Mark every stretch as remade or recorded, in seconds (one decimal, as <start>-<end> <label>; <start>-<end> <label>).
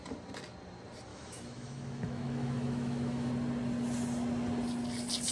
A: 0.0-1.1 recorded; 1.1-3.3 remade; 3.3-5.3 recorded